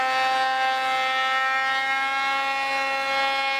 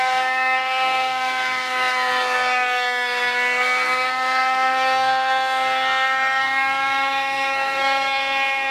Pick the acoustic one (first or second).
first